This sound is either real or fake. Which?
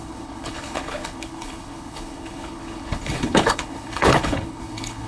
fake